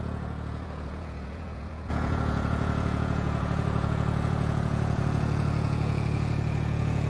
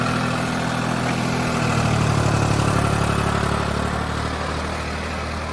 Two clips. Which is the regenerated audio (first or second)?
first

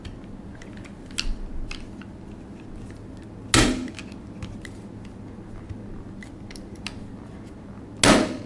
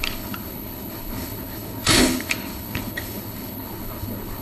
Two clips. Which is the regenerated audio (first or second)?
second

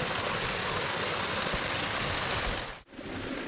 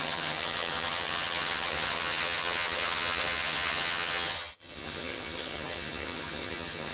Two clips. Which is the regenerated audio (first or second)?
second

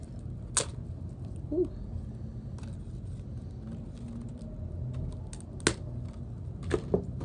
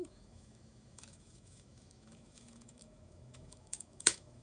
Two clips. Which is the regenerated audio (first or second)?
second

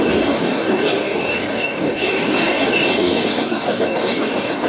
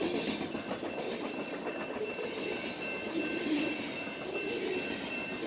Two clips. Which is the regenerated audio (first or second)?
first